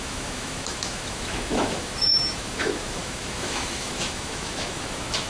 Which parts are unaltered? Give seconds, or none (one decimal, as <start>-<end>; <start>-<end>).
none